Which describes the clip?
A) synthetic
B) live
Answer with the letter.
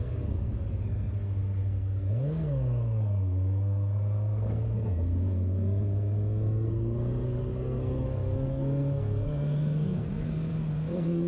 A